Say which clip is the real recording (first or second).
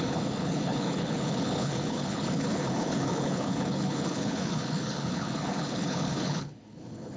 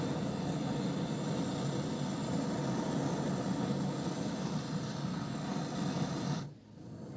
second